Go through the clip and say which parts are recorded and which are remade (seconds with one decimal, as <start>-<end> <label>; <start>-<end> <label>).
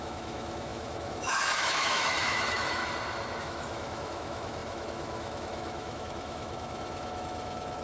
0.0-2.8 remade; 2.8-3.4 recorded; 3.4-7.8 remade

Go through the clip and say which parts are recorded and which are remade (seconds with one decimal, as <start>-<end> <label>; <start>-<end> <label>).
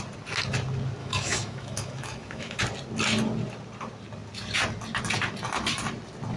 0.0-1.0 recorded; 1.0-2.6 remade; 2.6-6.4 recorded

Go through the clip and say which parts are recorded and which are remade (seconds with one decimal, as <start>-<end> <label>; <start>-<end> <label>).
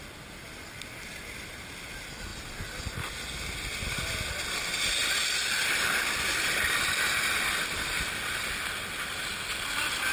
0.0-10.1 recorded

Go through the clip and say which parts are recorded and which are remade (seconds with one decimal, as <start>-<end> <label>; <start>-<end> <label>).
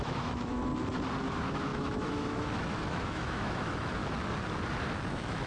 0.0-0.7 remade; 0.7-1.2 recorded; 1.2-4.0 remade; 4.0-5.1 recorded; 5.1-5.5 remade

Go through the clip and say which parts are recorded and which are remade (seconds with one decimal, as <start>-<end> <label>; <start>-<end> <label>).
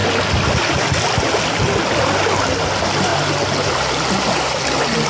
0.0-5.1 recorded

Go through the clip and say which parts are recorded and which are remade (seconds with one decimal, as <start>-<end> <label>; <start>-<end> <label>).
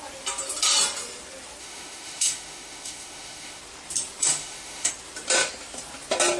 0.0-1.6 recorded; 1.6-3.6 remade; 3.6-4.2 recorded; 4.2-4.9 remade; 4.9-6.4 recorded